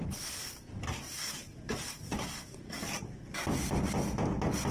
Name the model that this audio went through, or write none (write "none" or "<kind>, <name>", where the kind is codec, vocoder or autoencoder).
none